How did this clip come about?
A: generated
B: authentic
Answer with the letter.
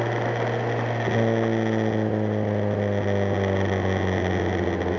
B